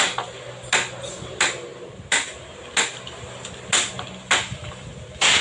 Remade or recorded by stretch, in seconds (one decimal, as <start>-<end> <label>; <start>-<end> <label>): 0.0-5.4 recorded